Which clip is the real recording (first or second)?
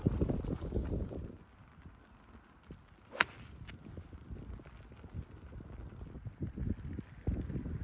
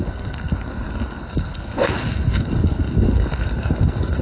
first